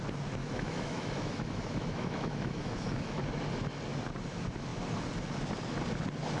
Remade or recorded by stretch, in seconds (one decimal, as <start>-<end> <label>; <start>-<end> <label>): 0.0-0.4 recorded; 0.4-3.2 remade; 3.2-6.4 recorded